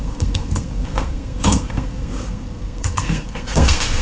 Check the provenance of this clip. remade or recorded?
remade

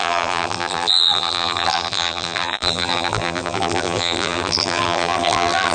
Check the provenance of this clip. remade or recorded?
remade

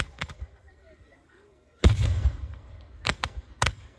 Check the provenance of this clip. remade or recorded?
remade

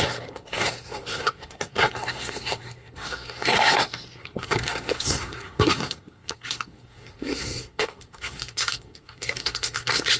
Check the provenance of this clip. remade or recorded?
remade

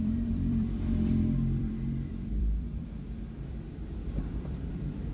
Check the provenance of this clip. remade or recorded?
remade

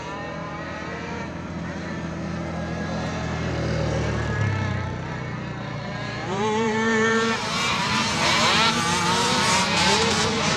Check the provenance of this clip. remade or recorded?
remade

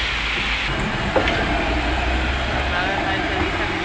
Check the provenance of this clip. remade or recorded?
recorded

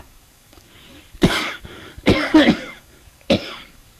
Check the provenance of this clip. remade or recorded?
remade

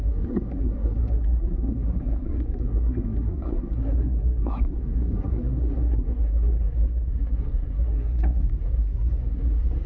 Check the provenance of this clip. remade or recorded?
remade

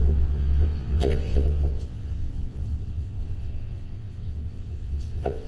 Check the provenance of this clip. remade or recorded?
remade